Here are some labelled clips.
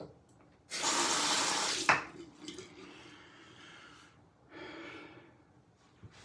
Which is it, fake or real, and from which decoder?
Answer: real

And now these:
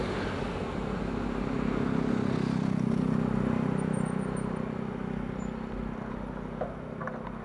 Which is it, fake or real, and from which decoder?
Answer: real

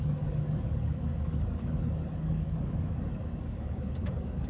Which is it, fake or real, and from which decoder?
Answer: fake, codec, DAC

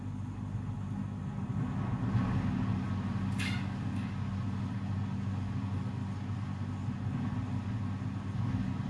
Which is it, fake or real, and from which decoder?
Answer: real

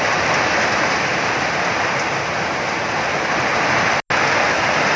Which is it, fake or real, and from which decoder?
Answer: real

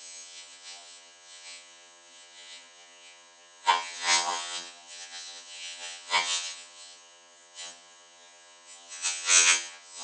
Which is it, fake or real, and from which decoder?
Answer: fake, vocoder, HiFi-GAN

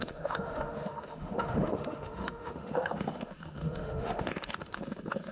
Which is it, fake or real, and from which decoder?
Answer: fake, autoencoder, DAC-VAE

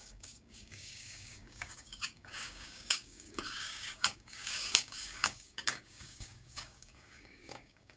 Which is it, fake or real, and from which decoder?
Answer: fake, codec, DAC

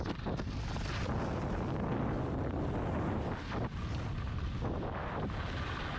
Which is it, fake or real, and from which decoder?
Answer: real